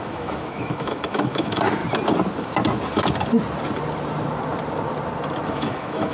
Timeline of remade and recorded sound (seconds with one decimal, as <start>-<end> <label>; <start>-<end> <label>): 0.0-1.8 remade; 1.8-5.5 recorded; 5.5-6.1 remade